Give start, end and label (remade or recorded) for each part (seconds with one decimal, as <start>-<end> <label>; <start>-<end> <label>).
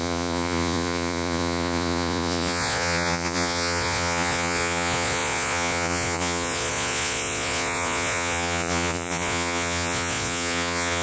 0.0-11.0 remade